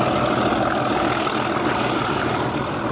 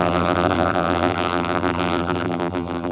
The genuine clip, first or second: first